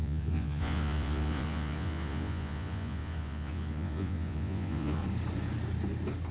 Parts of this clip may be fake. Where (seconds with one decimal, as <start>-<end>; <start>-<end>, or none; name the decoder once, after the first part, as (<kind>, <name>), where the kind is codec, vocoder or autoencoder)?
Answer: 0.0-5.0 (vocoder, Vocos)